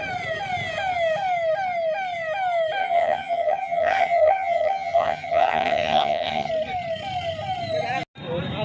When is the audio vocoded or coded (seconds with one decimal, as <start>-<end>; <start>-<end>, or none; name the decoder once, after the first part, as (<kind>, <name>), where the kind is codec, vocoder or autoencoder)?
2.8-6.5 (vocoder, HiFi-GAN)